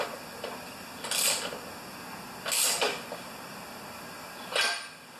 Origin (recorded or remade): recorded